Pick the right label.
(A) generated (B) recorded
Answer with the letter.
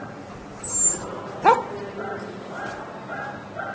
B